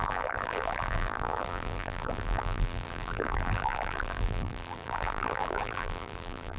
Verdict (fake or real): fake